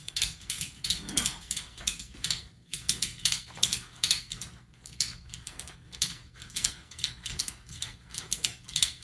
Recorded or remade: remade